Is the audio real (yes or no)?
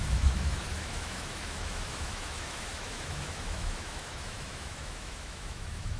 no